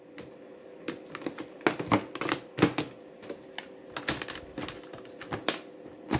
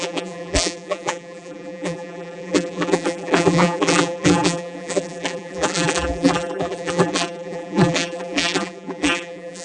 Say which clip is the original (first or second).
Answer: first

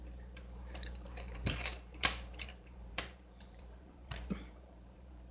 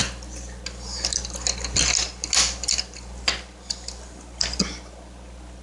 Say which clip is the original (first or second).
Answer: second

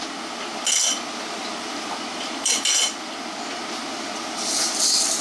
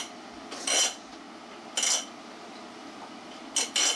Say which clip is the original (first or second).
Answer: second